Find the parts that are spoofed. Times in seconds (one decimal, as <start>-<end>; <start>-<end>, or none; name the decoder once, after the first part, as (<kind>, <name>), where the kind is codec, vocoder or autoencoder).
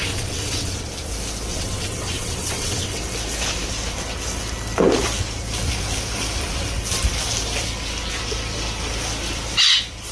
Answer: 0.0-0.9 (vocoder, WaveNeXt); 1.5-3.0